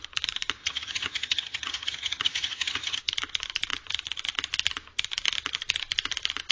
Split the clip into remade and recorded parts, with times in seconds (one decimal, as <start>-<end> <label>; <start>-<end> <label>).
0.0-0.6 recorded; 0.6-3.0 remade; 3.0-6.5 recorded